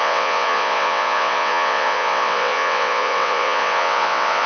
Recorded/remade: remade